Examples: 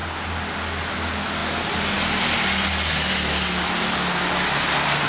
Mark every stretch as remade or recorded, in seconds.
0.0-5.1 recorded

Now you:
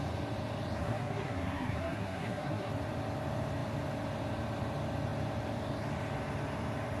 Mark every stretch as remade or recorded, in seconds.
0.0-0.8 recorded; 0.8-2.7 remade; 2.7-7.0 recorded

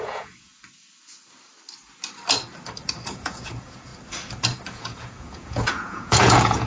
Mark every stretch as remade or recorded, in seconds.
0.0-0.5 remade; 0.5-3.1 recorded; 3.1-3.9 remade; 3.9-4.6 recorded; 4.6-6.7 remade